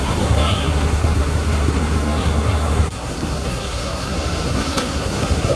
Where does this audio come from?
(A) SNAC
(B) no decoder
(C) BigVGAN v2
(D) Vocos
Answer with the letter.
A